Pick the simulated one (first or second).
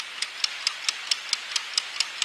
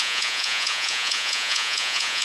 second